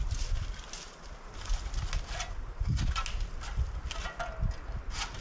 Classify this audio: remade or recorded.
recorded